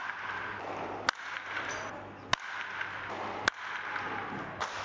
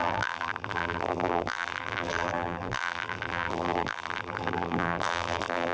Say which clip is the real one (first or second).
first